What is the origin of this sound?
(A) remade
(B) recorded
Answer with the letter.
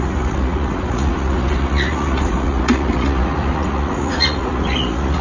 A